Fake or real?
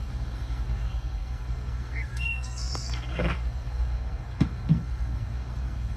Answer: fake